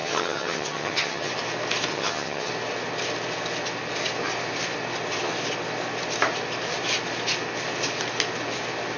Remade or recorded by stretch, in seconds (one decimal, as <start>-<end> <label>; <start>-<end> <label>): 0.0-1.3 remade; 1.3-1.9 recorded; 1.9-2.5 remade; 2.5-9.0 recorded